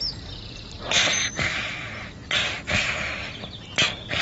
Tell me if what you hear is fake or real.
real